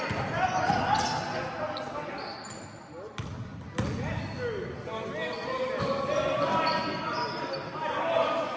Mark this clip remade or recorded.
recorded